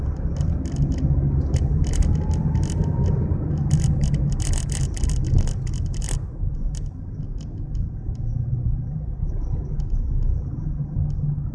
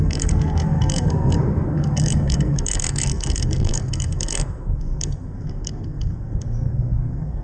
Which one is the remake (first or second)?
second